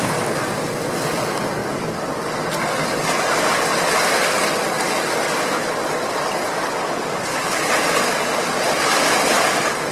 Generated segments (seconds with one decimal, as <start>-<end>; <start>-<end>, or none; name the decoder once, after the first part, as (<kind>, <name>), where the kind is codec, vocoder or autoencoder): none